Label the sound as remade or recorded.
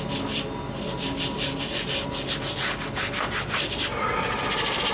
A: recorded